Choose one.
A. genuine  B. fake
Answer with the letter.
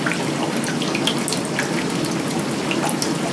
A